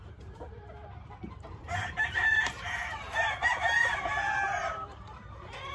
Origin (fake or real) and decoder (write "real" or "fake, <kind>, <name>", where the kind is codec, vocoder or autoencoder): fake, vocoder, BigVGAN v2